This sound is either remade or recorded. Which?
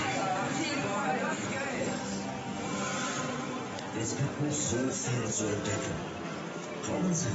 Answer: recorded